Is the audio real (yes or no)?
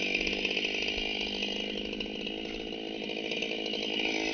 yes